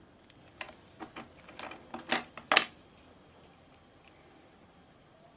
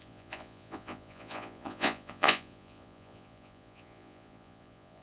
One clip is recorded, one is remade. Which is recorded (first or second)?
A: first